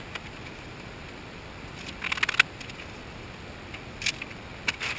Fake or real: real